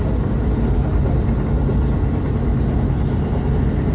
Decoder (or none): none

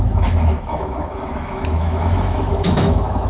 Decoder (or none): autoencoder, DAC-VAE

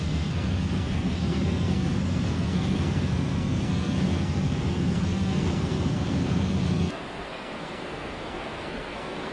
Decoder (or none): codec, SNAC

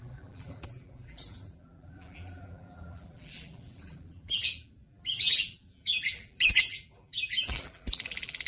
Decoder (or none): vocoder, BigVGAN v2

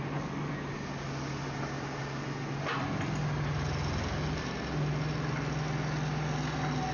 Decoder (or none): none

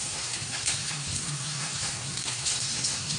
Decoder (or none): codec, SNAC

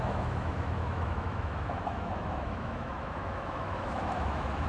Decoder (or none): autoencoder, DAC-VAE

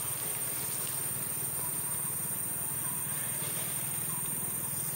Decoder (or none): none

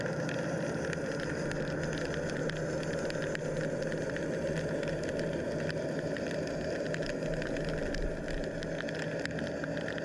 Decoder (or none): none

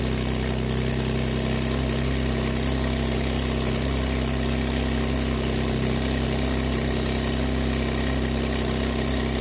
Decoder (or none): none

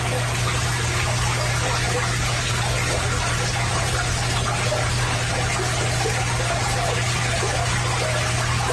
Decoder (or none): none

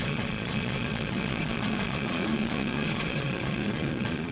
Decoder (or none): vocoder, Vocos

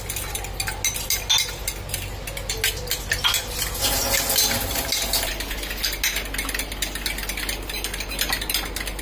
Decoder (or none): none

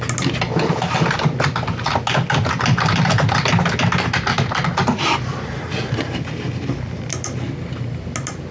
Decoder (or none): none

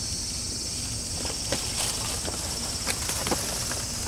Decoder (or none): none